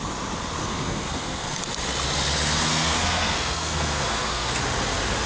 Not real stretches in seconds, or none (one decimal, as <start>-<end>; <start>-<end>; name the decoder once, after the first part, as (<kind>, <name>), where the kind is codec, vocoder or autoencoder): 0.6-1.6 (codec, SNAC); 2.7-4.6

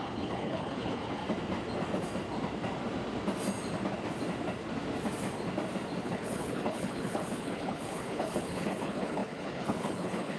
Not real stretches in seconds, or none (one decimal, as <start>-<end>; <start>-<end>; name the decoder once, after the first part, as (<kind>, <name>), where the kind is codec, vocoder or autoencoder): 0.0-1.2 (codec, HILCodec); 6.0-10.4